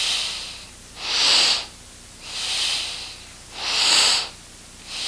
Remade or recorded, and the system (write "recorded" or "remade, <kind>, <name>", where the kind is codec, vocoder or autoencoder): recorded